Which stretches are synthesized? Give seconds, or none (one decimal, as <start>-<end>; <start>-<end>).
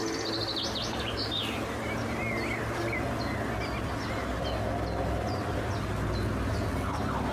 0.0-2.2